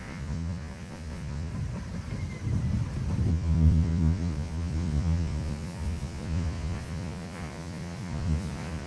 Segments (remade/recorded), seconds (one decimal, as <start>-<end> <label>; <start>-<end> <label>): 0.0-1.5 remade; 1.5-3.3 recorded; 3.3-8.9 remade